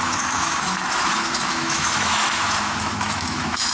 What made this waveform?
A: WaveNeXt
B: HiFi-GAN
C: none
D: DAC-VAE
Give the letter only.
D